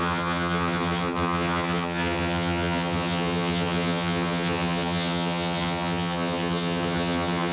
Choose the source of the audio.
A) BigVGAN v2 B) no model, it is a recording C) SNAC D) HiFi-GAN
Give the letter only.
D